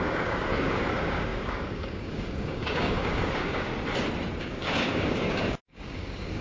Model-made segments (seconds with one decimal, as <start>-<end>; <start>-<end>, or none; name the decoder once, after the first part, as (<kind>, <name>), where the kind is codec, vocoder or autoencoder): 0.0-3.7 (codec, DAC); 4.4-6.4